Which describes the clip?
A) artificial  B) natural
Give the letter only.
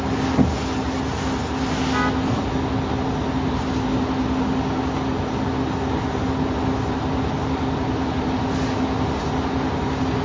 B